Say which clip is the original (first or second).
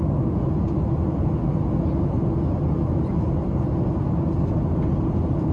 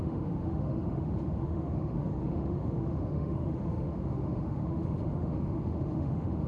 first